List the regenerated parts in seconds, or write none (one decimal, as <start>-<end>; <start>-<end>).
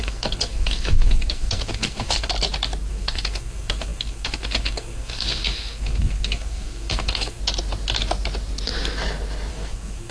0.0-2.3; 2.9-7.4; 9.5-10.1